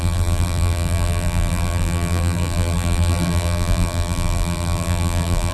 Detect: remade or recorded remade